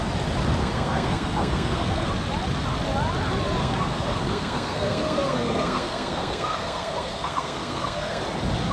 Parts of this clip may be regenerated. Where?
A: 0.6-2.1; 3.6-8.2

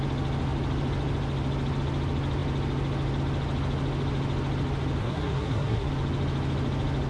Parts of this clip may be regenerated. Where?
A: 5.0-5.9

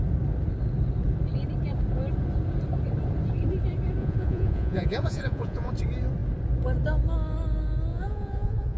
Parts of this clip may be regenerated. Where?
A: 4.0-5.7; 7.9-8.8